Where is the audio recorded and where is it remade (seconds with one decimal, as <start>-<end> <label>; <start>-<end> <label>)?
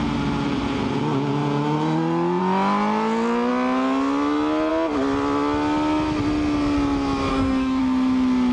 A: 0.0-7.3 recorded; 7.3-7.8 remade; 7.8-8.5 recorded